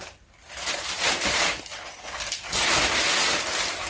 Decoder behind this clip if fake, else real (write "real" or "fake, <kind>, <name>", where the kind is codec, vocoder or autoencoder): real